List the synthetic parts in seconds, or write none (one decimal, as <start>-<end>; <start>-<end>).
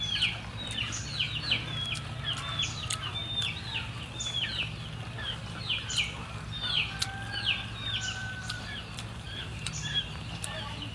8.2-10.9